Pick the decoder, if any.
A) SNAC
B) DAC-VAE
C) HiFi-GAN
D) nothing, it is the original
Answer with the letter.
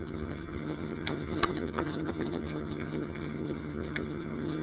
C